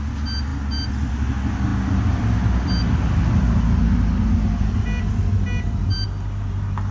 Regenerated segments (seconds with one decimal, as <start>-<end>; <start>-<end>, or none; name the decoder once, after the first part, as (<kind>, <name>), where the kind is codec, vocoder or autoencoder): none